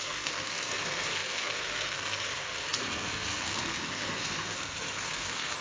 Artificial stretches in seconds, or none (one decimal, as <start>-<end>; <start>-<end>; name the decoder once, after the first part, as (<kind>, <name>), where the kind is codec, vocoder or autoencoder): 0.0-5.6 (codec, SNAC)